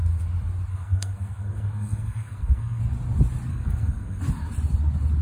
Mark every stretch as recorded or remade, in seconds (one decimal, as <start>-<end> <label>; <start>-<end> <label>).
0.0-0.7 recorded; 0.7-2.8 remade; 2.8-3.5 recorded; 3.5-4.2 remade; 4.2-5.2 recorded